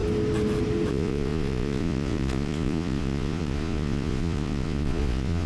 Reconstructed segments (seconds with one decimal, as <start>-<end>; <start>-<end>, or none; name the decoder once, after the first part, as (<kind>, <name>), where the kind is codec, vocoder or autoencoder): 0.9-5.5 (vocoder, Vocos)